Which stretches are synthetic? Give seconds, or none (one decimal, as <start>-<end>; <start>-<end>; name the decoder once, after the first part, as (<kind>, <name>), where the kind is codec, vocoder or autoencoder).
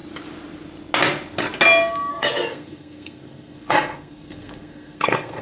2.1-5.4 (codec, SNAC)